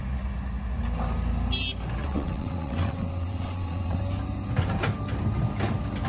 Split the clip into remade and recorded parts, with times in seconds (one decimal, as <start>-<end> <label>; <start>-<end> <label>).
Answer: 0.0-2.0 recorded; 2.0-4.0 remade; 4.0-6.1 recorded